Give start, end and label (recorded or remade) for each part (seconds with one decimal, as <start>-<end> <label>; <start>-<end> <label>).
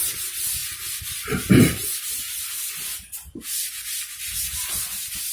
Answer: 0.0-5.3 remade